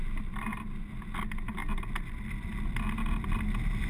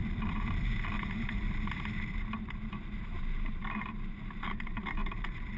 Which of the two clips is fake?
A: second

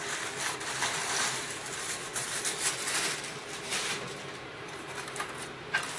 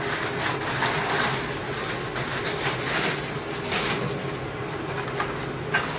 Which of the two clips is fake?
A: first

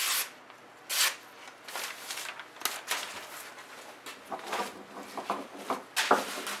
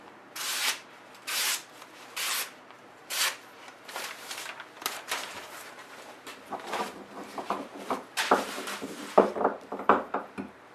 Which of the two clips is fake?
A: second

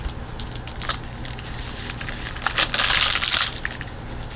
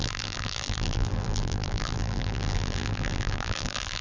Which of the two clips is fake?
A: second